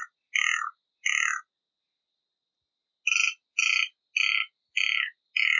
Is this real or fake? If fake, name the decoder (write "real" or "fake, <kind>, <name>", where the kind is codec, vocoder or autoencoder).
real